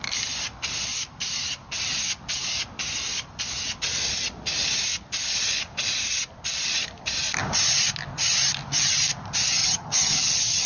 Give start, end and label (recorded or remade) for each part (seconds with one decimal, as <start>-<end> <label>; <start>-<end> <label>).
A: 0.0-9.6 recorded; 9.6-10.7 remade